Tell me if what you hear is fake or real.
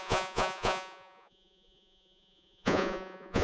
fake